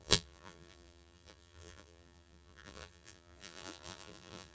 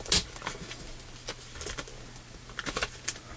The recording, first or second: second